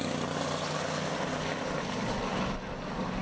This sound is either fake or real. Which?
real